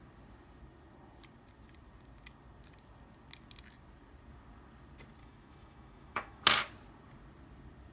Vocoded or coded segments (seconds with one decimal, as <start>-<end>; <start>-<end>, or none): 5.2-6.4